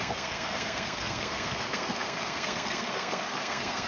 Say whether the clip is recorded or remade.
remade